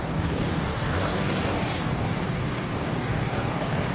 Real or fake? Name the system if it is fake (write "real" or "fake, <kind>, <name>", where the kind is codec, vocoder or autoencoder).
fake, codec, DAC